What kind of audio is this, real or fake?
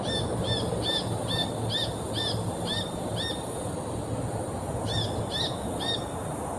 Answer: real